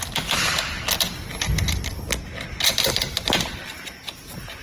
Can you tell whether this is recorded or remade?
recorded